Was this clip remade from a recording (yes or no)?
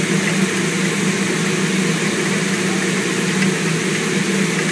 no